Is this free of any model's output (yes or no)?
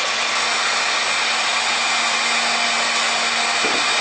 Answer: yes